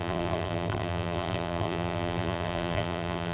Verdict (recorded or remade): remade